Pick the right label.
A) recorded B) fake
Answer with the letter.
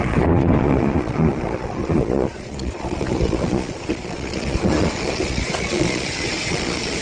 B